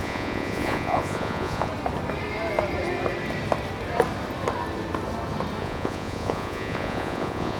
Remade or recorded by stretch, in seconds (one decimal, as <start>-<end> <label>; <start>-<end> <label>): 0.0-1.7 remade; 1.7-5.6 recorded; 5.6-7.6 remade